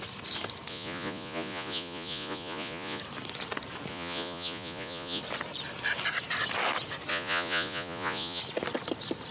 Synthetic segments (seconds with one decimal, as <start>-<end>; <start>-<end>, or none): 0.7-3.0; 3.9-5.2; 7.1-8.4

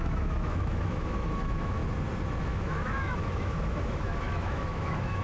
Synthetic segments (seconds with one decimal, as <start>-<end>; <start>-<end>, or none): 0.0-1.8; 2.4-5.2

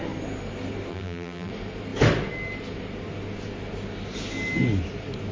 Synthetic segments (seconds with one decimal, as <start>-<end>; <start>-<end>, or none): 0.9-1.5

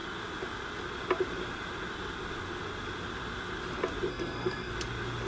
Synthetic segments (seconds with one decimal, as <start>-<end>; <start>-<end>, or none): 4.1-4.7

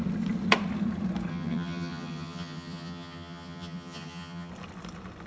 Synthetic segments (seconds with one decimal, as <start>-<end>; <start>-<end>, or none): 1.3-4.5

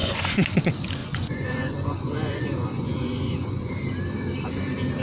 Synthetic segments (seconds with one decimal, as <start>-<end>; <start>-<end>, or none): 0.0-0.6; 1.0-3.7

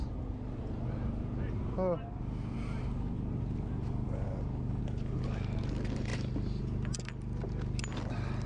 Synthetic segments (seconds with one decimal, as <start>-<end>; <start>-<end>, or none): none